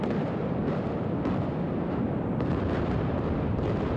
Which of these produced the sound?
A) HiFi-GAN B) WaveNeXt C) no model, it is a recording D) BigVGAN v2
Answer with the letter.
D